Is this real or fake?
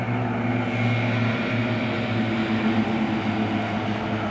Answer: real